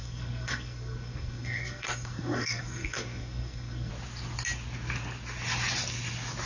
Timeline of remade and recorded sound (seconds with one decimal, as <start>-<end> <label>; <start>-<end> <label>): 0.0-3.9 remade; 3.9-6.5 recorded